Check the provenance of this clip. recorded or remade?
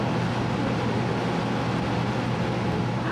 recorded